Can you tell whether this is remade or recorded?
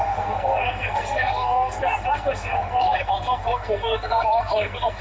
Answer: remade